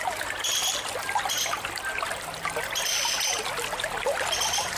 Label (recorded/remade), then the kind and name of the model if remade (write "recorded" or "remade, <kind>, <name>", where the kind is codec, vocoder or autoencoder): recorded